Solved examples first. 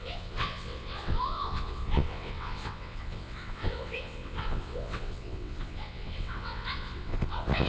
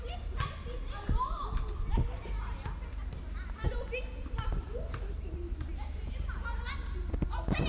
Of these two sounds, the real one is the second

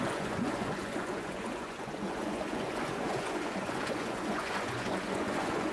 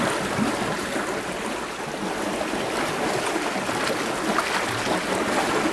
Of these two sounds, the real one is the second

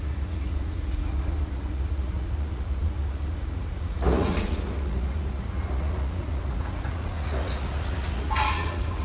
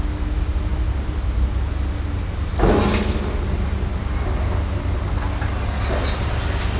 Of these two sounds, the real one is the second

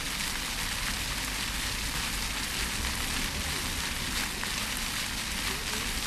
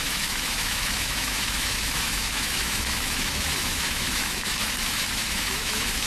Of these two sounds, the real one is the first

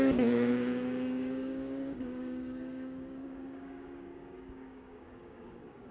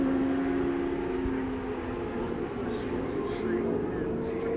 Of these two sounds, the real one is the second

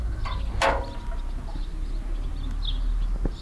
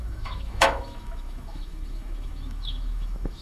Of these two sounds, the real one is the first